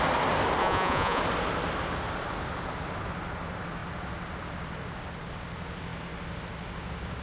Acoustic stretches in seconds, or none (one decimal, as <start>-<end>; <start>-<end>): 0.0-0.6; 1.2-7.2

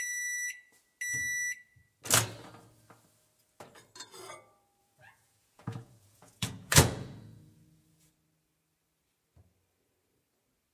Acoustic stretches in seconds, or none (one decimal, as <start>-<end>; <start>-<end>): 0.0-4.8; 8.1-10.7

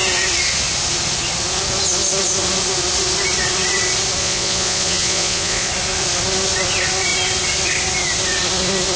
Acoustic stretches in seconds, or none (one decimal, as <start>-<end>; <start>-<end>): 0.0-4.2; 5.7-9.0

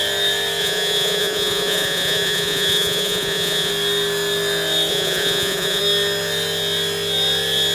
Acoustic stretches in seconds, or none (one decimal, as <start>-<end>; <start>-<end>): 0.0-0.6; 3.7-4.9; 5.8-7.7

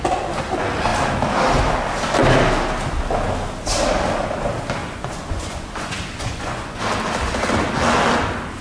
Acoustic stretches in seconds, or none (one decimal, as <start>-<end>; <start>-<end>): 0.0-4.8; 6.8-8.6

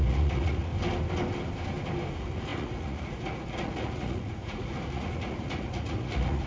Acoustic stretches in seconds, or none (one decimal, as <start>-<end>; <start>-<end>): 0.7-2.1

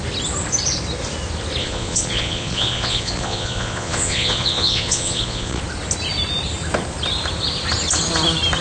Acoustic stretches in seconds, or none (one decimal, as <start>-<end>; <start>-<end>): 0.0-1.6; 5.6-8.6

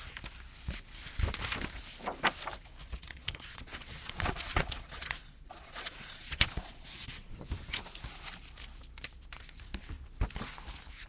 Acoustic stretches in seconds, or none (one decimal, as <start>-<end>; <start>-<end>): 0.0-3.0; 7.2-11.1